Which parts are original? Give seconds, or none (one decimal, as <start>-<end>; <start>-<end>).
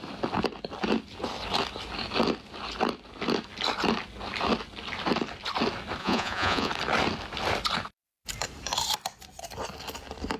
0.0-6.0; 6.7-10.4